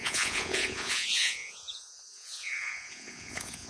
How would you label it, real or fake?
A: fake